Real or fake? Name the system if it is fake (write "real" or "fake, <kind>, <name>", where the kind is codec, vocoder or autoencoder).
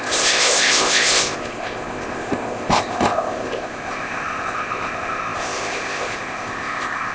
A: fake, codec, ZipCodec